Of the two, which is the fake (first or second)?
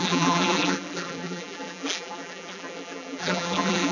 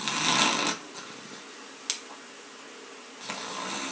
first